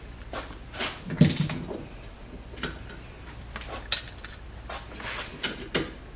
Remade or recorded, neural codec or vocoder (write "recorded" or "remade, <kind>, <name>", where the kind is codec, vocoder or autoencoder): recorded